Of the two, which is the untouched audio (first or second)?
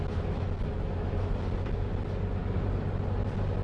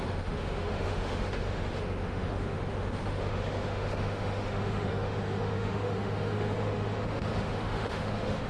first